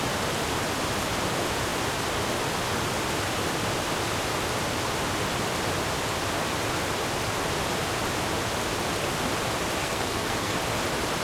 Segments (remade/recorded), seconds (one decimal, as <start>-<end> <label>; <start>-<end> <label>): 0.0-9.8 recorded; 9.8-10.6 remade; 10.6-11.2 recorded